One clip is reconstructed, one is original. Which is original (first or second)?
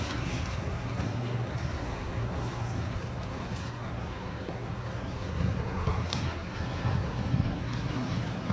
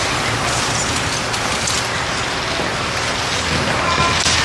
second